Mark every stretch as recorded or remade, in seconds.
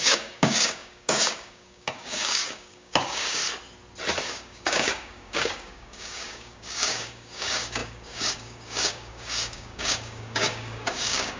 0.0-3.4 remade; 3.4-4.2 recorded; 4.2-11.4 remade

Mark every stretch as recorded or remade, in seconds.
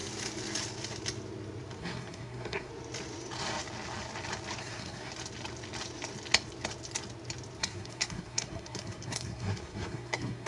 0.0-1.8 recorded; 1.8-2.7 remade; 2.7-4.6 recorded; 4.6-5.1 remade; 5.1-7.6 recorded; 7.6-10.5 remade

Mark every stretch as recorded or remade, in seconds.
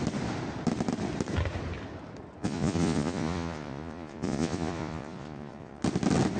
0.0-2.4 recorded; 2.4-5.8 remade; 5.8-6.4 recorded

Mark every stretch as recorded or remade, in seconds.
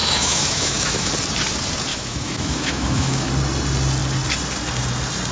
0.0-1.1 remade; 1.1-1.9 recorded; 1.9-3.3 remade; 3.3-5.3 recorded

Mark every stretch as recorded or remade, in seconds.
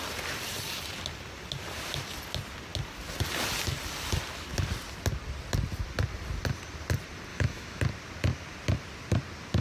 0.0-7.3 recorded; 7.3-7.8 remade; 7.8-9.6 recorded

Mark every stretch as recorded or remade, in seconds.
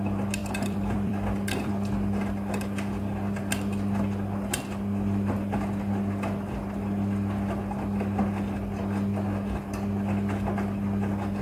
0.0-0.4 recorded; 0.4-1.7 remade; 1.7-11.4 recorded